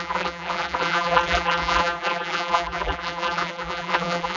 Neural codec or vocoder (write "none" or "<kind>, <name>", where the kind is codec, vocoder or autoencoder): vocoder, BigVGAN v2